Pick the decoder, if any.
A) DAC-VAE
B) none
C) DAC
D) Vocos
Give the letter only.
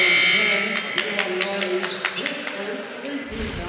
B